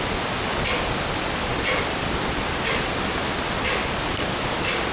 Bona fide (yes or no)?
yes